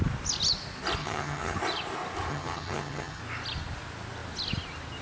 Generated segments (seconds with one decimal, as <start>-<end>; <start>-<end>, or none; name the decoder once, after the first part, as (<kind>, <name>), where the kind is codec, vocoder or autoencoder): 1.0-1.6 (vocoder, HiFi-GAN); 2.3-3.2

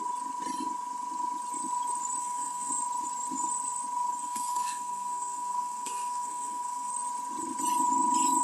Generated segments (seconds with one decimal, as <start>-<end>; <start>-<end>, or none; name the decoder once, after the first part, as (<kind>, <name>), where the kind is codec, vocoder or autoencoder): 2.2-2.7 (codec, SNAC); 4.2-6.9

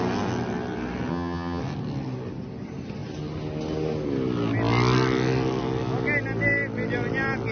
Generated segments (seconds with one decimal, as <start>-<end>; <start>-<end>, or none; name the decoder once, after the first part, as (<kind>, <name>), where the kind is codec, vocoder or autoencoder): 1.1-1.6 (vocoder, HiFi-GAN)

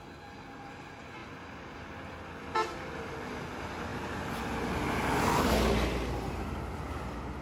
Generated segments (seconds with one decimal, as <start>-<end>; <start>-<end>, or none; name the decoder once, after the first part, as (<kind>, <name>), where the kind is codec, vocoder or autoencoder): none